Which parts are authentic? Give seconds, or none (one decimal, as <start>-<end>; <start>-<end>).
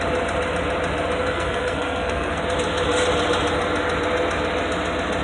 0.0-1.2; 2.4-5.2